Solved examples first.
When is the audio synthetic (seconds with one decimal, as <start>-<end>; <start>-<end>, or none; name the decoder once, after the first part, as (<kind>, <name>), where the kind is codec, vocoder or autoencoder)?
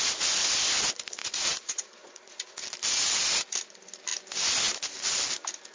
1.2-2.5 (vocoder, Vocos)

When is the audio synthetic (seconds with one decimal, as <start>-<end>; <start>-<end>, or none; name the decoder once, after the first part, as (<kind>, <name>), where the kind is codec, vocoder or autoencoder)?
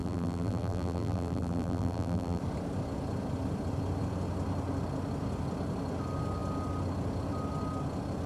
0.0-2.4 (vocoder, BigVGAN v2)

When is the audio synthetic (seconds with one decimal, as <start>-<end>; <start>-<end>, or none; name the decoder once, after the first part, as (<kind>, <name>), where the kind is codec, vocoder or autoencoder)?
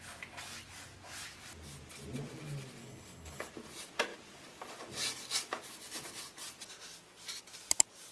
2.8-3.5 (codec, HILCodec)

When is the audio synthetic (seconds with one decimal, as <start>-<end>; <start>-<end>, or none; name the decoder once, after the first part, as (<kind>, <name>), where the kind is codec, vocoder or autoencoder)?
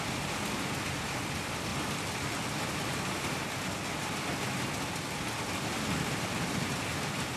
none